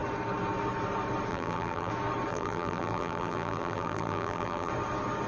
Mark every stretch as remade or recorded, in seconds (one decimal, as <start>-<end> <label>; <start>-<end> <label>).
0.0-1.3 recorded; 1.3-1.9 remade; 1.9-2.3 recorded; 2.3-4.7 remade; 4.7-5.3 recorded